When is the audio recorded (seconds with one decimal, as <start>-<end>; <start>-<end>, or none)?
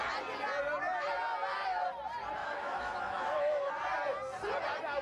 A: 0.0-2.4; 3.7-5.0